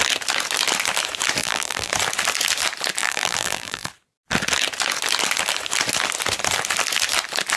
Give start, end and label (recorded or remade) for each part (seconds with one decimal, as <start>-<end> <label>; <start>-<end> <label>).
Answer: 0.0-1.4 recorded; 1.4-1.9 remade; 1.9-3.0 recorded; 3.0-3.9 remade; 3.9-7.6 recorded